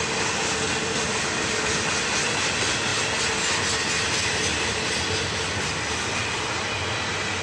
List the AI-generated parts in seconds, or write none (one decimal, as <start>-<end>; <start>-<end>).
none